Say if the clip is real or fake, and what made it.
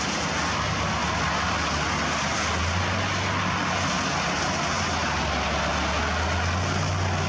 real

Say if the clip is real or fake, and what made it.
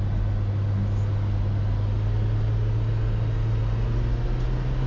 real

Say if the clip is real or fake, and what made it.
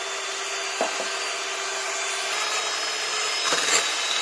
real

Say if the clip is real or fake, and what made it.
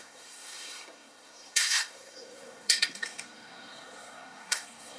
fake, codec, SNAC